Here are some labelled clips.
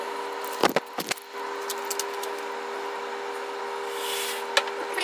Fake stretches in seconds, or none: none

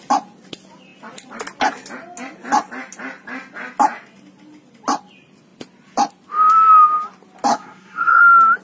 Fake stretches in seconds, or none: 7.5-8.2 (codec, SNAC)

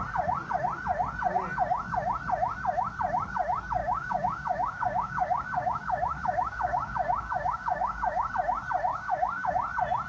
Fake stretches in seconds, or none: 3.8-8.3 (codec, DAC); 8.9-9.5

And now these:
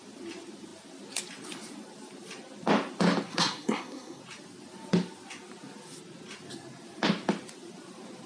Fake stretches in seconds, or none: 3.3-4.2 (codec, SNAC)